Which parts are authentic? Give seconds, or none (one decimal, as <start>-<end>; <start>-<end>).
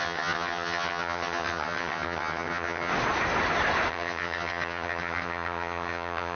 2.9-3.9